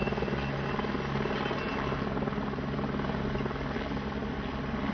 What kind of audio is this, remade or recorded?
recorded